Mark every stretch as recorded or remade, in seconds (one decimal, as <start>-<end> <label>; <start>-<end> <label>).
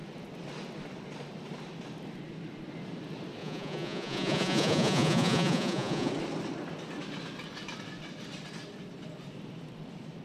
0.0-3.4 recorded; 3.4-6.1 remade; 6.1-10.2 recorded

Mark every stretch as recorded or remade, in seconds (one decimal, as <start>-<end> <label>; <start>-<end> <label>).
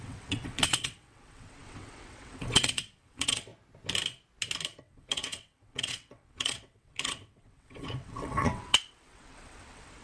0.0-3.5 remade; 3.5-4.8 recorded; 4.8-10.0 remade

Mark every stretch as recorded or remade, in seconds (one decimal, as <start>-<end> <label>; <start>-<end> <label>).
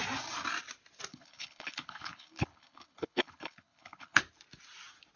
0.0-1.1 recorded; 1.1-4.2 remade; 4.2-5.2 recorded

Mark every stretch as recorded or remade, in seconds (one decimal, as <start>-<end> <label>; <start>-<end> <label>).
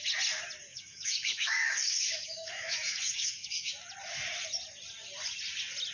0.0-0.7 recorded; 0.7-3.7 remade; 3.7-5.9 recorded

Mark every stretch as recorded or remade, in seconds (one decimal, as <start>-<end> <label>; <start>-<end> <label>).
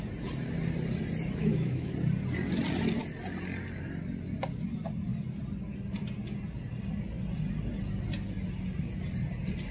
0.0-1.4 recorded; 1.4-1.9 remade; 1.9-9.7 recorded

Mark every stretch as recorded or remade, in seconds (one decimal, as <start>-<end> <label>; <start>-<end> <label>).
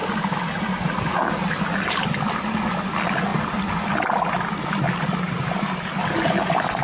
0.0-6.8 recorded